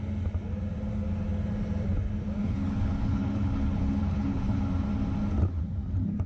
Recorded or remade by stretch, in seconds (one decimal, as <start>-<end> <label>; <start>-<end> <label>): 0.0-2.4 recorded; 2.4-4.6 remade; 4.6-6.3 recorded